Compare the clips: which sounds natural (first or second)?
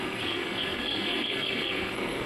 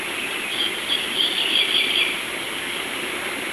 second